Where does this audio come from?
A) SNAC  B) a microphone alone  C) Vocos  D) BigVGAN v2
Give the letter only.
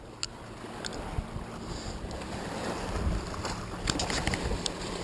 B